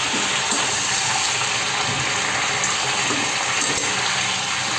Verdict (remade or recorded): recorded